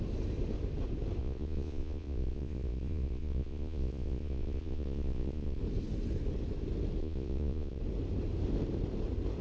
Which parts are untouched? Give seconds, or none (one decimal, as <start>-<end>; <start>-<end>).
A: 0.0-1.2; 5.6-7.0; 7.8-9.4